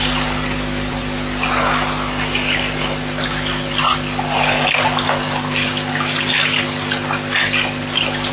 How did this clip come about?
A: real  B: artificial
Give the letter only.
A